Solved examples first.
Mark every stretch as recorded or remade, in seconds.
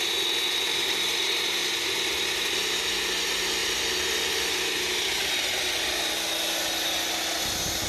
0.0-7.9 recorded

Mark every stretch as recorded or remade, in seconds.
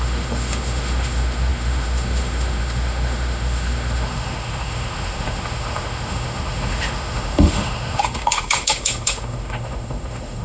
0.0-10.4 remade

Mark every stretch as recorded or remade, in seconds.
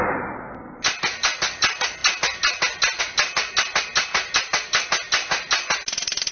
0.0-6.3 recorded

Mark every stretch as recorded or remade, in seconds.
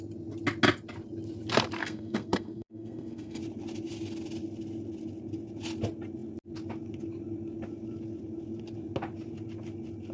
0.0-1.8 recorded; 1.8-3.4 remade; 3.4-10.1 recorded